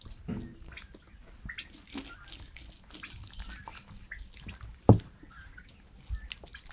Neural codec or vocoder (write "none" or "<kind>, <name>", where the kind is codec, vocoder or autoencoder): none